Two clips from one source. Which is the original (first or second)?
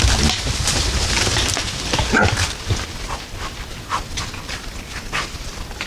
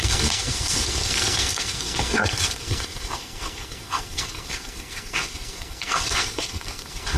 first